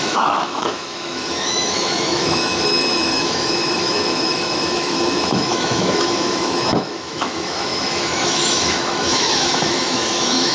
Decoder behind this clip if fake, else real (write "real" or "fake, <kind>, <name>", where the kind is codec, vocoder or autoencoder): fake, autoencoder, DAC-VAE